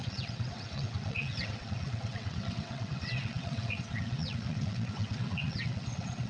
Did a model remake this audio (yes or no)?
yes